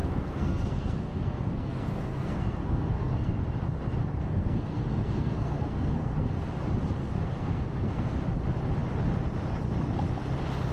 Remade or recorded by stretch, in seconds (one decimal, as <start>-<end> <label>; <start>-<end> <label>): 0.0-3.3 remade; 3.3-4.0 recorded; 4.0-6.4 remade; 6.4-7.0 recorded; 7.0-8.1 remade; 8.1-10.7 recorded